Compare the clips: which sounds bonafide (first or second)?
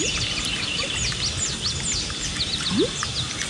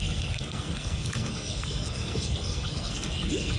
first